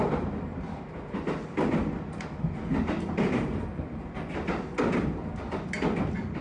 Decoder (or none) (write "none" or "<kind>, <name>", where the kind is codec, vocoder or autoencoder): none